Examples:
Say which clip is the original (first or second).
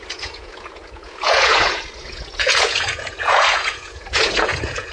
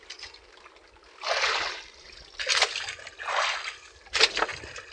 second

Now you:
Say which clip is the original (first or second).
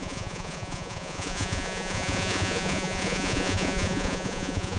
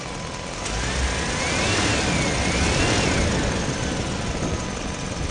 second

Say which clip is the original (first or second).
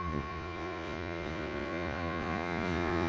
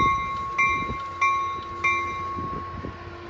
second